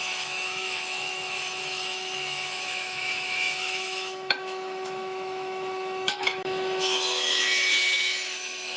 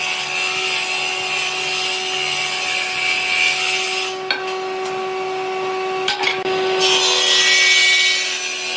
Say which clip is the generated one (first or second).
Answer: first